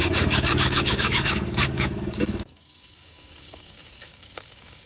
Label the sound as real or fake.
fake